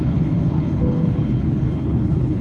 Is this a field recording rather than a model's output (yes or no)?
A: no